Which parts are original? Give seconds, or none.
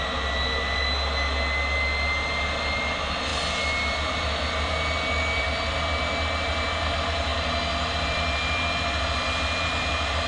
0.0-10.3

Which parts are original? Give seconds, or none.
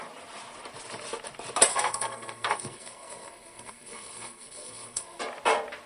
0.0-1.7; 5.2-5.9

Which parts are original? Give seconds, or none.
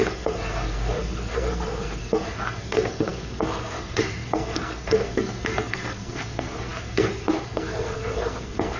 none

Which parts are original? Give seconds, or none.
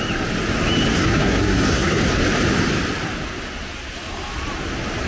0.0-0.9; 2.0-5.1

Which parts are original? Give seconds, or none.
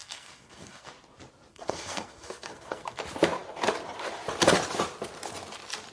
0.9-1.5; 3.0-5.9